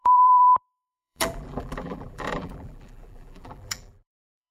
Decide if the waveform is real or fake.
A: fake